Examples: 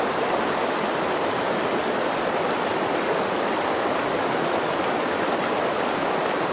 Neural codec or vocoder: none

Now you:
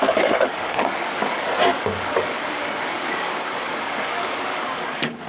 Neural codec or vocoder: codec, DAC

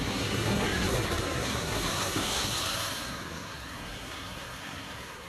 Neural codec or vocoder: codec, SNAC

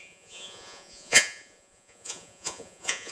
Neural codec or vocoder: vocoder, Vocos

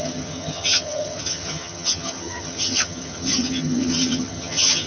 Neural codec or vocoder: vocoder, HiFi-GAN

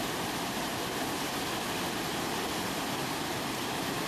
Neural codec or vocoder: none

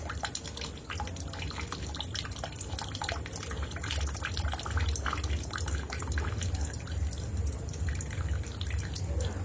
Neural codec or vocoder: none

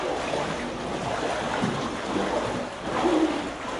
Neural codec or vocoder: none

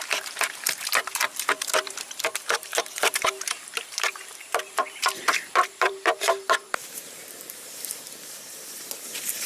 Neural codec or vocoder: vocoder, BigVGAN v2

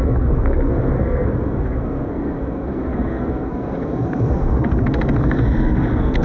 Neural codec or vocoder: codec, SNAC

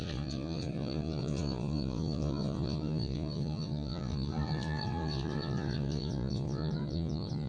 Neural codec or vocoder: vocoder, Vocos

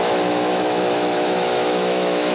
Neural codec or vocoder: autoencoder, DAC-VAE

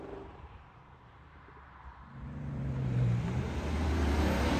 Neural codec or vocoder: vocoder, BigVGAN v2